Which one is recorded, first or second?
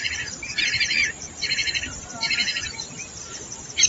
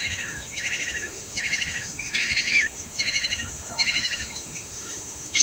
first